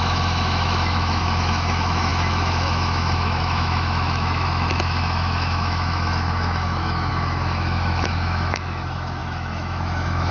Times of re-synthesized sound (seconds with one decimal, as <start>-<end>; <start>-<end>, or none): 0.0-10.3